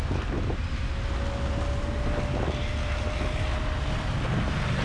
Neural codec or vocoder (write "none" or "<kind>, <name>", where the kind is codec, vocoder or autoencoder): none